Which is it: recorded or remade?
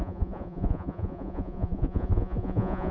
remade